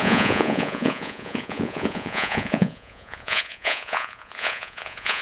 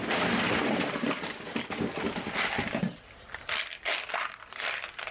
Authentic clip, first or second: second